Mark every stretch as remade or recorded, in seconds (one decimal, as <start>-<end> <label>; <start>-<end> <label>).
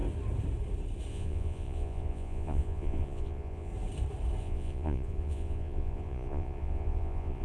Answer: 0.0-1.1 recorded; 1.1-3.7 remade; 3.7-4.4 recorded; 4.4-7.4 remade